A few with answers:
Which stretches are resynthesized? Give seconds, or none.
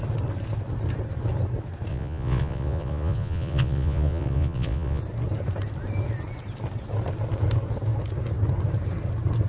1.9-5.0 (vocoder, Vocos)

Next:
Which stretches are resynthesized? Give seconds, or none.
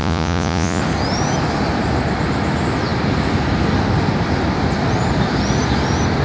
0.0-0.8 (vocoder, Vocos)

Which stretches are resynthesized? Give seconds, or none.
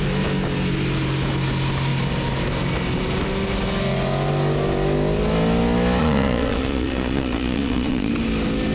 6.0-8.1 (vocoder, Vocos)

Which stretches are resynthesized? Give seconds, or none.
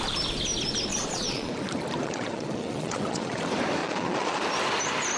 0.9-1.5 (vocoder, Vocos); 2.0-3.4; 3.8-4.4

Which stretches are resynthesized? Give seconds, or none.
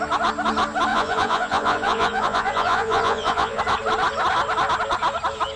0.9-3.6 (vocoder, Vocos)